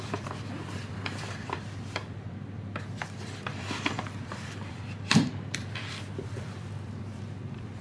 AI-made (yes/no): yes